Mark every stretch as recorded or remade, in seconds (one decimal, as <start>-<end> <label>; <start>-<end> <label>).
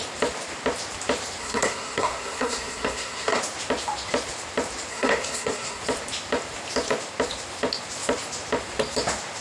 0.0-1.4 recorded; 1.4-3.4 remade; 3.4-4.9 recorded; 4.9-5.8 remade; 5.8-9.4 recorded